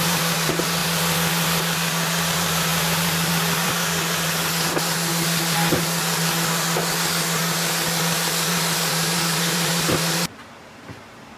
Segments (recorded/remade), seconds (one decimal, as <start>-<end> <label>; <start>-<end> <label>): 0.0-0.8 remade; 0.8-2.2 recorded; 2.2-4.4 remade; 4.4-8.5 recorded; 8.5-11.4 remade